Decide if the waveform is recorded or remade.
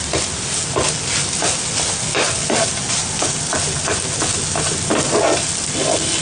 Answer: recorded